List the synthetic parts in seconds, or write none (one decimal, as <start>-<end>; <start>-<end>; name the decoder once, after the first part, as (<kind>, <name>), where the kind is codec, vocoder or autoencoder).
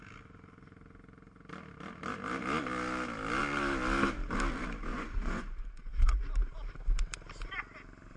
4.9-6.2 (vocoder, Vocos)